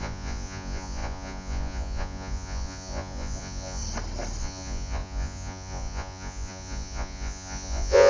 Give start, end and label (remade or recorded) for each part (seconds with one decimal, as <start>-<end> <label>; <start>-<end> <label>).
0.0-3.8 remade; 3.8-4.4 recorded; 4.4-8.1 remade